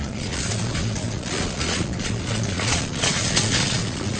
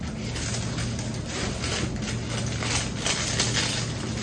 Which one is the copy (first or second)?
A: first